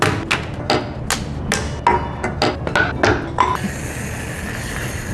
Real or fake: real